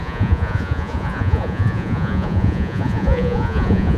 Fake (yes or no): yes